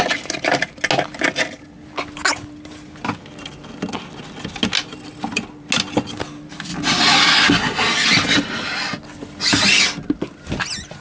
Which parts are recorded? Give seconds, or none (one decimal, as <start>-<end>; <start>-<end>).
0.0-11.0